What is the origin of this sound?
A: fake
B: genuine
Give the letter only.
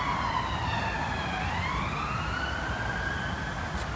B